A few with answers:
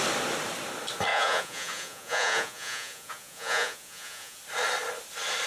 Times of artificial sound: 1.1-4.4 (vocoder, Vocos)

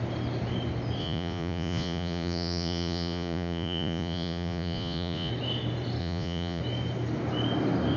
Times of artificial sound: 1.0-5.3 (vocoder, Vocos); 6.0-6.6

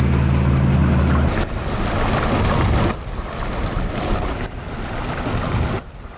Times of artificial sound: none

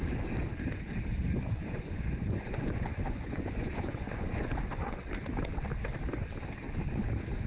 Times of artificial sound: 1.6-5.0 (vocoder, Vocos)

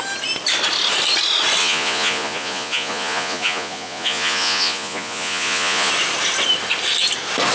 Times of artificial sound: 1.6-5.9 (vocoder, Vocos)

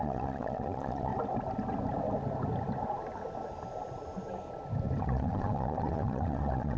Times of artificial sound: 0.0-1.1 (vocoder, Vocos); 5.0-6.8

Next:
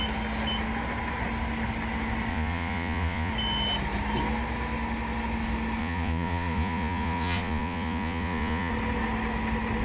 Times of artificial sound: 2.3-3.3 (vocoder, Vocos); 5.8-8.7